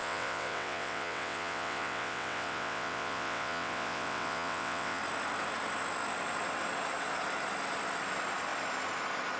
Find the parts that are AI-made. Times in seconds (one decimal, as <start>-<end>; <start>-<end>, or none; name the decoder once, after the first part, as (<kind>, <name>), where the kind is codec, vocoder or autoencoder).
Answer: 0.0-5.0 (vocoder, WaveNeXt)